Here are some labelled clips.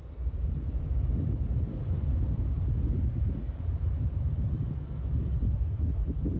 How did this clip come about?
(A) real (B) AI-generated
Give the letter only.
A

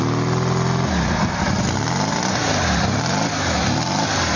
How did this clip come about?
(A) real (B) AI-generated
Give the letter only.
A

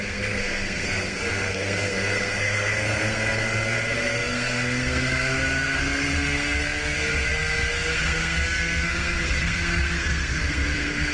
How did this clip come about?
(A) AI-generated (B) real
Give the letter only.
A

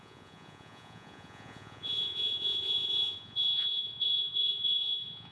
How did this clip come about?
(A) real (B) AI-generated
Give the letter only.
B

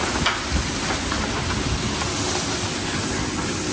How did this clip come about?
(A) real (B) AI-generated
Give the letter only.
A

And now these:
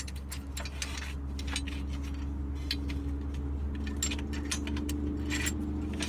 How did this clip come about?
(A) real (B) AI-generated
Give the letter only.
A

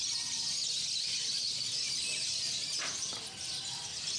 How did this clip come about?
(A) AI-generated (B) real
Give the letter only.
B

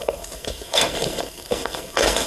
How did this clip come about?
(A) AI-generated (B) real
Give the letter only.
A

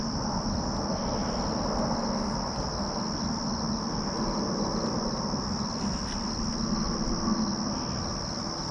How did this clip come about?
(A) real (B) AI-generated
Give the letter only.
A